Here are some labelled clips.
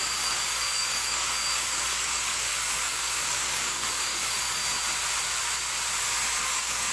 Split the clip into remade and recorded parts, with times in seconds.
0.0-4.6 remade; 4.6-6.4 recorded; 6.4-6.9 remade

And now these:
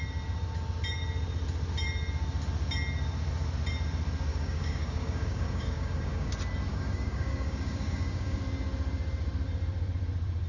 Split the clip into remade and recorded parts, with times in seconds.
0.0-4.3 recorded; 4.3-6.3 remade; 6.3-6.7 recorded; 6.7-8.4 remade; 8.4-10.5 recorded

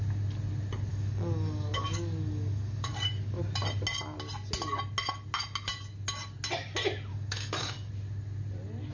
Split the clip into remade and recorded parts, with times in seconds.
0.0-0.9 recorded; 0.9-3.4 remade; 3.4-7.1 recorded; 7.1-7.9 remade; 7.9-8.9 recorded

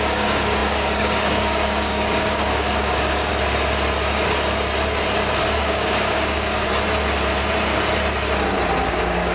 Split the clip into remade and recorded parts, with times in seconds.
0.0-3.3 remade; 3.3-5.4 recorded; 5.4-6.7 remade; 6.7-8.9 recorded; 8.9-9.3 remade